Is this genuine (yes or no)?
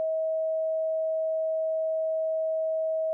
yes